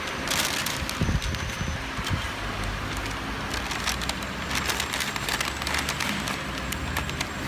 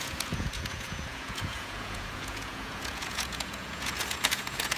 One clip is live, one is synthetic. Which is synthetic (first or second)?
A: second